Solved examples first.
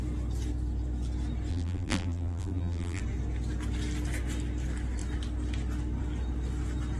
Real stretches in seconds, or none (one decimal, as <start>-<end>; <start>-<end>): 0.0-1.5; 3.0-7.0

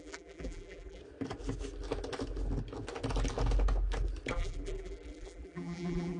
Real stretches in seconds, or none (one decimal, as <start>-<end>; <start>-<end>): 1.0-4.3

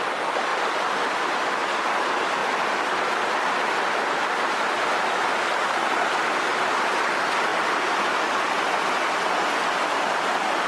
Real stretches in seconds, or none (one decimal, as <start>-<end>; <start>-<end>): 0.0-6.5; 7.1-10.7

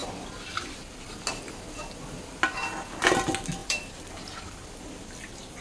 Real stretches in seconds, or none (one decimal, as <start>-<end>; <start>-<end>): 0.0-3.6; 4.9-5.6

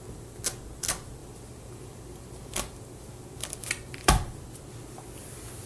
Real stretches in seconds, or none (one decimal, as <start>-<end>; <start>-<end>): 0.0-1.2; 4.4-5.7

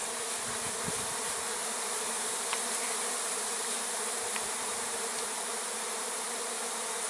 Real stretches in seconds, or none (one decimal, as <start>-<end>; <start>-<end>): 0.0-0.9